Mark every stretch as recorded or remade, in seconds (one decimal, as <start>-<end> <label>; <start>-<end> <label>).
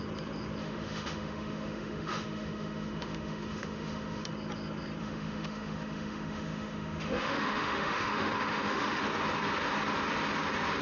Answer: 0.0-0.6 recorded; 0.6-4.3 remade; 4.3-5.0 recorded; 5.0-9.0 remade; 9.0-10.8 recorded